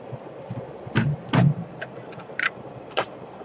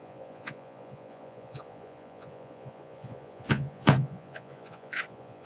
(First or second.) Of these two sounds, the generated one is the second